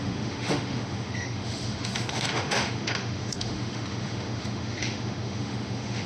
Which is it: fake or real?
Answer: fake